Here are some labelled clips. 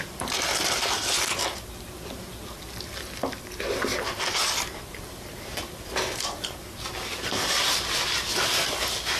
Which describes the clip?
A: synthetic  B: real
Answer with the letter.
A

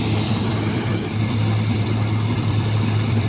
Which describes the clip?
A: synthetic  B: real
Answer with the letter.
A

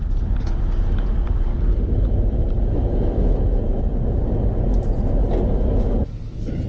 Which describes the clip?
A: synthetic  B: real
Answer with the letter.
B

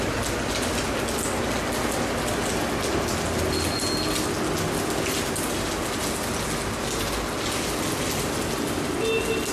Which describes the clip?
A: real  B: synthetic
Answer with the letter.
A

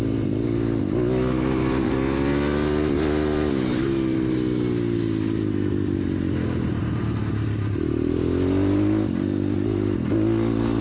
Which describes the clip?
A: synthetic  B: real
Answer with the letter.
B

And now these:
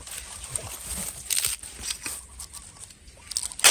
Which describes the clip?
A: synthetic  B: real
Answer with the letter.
B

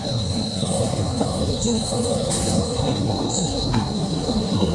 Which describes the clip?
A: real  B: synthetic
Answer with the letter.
B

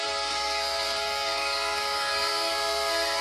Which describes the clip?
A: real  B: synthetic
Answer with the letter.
B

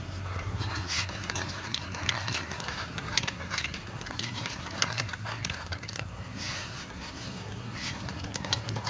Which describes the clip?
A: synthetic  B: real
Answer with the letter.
A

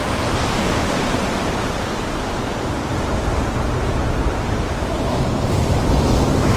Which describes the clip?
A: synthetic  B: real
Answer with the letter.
A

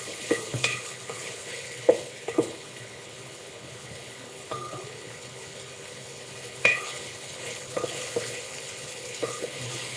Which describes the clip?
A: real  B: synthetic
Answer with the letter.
B